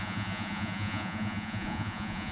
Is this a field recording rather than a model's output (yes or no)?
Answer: no